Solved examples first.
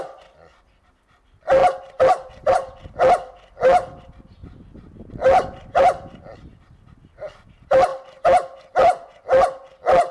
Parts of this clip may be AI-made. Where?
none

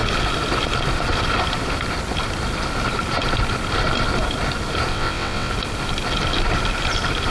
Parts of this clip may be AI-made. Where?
4.9-5.5 (vocoder, WaveNeXt)